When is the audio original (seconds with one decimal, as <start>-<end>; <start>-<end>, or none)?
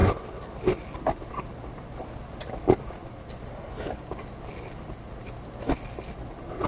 0.0-6.7